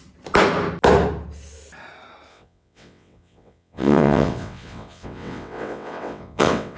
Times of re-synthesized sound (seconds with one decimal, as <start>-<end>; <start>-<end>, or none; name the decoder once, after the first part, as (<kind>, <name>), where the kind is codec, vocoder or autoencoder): 2.3-6.8 (vocoder, WaveNeXt)